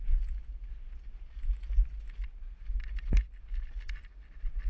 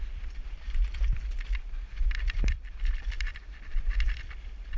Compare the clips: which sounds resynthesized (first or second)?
second